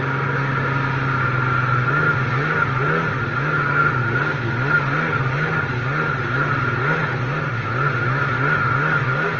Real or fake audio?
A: real